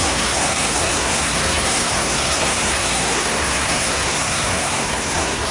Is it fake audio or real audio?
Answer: fake